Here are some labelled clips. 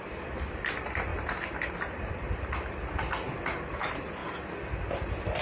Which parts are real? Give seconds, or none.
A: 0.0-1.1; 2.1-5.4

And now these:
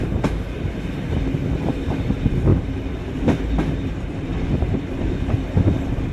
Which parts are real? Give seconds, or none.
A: 0.0-2.5; 4.8-6.1

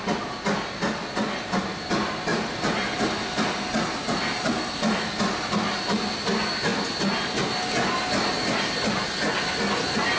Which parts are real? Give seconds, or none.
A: 0.0-10.2

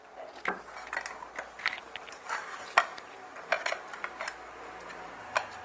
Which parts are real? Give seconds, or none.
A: 0.0-5.6

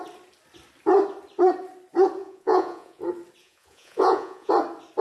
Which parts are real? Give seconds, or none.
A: 0.0-2.2; 3.0-3.4; 4.5-5.0